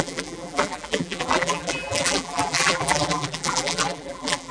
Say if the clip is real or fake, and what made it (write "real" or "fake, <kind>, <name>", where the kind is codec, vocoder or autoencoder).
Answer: fake, vocoder, BigVGAN v2